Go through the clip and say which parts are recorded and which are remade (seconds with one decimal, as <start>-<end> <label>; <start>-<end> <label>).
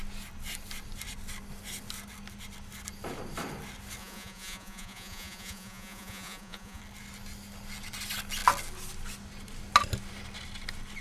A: 0.0-4.0 recorded; 4.0-6.8 remade; 6.8-11.0 recorded